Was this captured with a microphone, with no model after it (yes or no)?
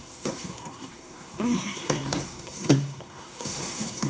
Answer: no